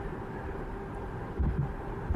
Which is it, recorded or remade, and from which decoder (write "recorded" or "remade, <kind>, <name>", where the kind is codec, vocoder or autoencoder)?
remade, vocoder, BigVGAN v2